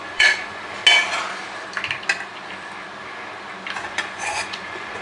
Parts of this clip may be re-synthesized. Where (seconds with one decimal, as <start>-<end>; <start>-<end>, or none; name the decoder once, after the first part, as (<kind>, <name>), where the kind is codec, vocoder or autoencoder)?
0.0-0.8 (vocoder, Vocos); 3.8-5.0